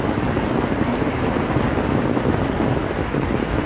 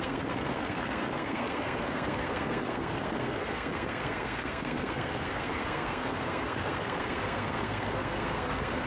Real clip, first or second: first